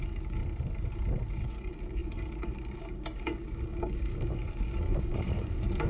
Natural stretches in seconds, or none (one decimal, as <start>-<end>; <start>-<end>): 0.4-1.3